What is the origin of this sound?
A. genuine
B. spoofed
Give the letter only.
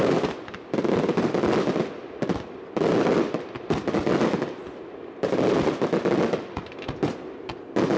A